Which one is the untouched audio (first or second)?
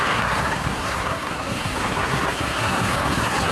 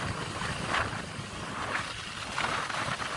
second